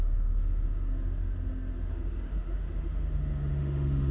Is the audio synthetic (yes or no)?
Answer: yes